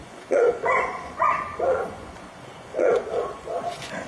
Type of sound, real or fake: fake